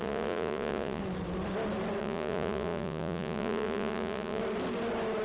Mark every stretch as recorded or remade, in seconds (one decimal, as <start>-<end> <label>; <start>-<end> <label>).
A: 0.0-1.0 remade; 1.0-2.0 recorded; 2.0-4.4 remade; 4.4-5.2 recorded